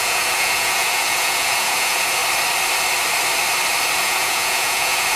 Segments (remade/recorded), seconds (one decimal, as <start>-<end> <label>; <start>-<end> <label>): 0.0-2.2 remade; 2.2-4.0 recorded; 4.0-5.2 remade